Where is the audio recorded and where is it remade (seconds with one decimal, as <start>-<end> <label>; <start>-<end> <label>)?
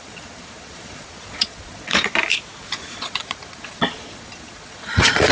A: 0.0-2.1 remade; 2.1-2.6 recorded; 2.6-5.3 remade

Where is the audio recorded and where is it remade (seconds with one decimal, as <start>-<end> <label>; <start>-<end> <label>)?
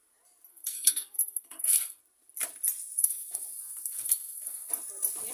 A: 0.0-0.5 recorded; 0.5-2.0 remade; 2.0-3.0 recorded; 3.0-4.7 remade; 4.7-5.3 recorded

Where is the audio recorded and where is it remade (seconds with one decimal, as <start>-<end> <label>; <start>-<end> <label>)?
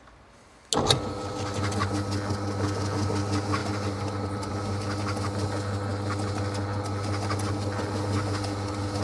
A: 0.0-3.6 recorded; 3.6-4.5 remade; 4.5-9.0 recorded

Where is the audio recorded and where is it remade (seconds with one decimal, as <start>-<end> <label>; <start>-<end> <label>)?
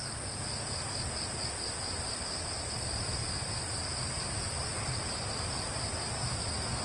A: 0.0-6.8 recorded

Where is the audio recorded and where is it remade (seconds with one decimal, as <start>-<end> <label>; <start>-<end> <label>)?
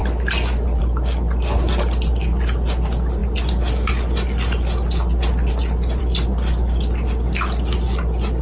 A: 0.0-8.4 recorded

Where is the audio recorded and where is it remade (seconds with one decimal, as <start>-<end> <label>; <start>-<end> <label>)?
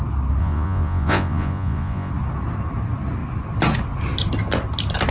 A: 0.0-0.4 recorded; 0.4-2.1 remade; 2.1-5.1 recorded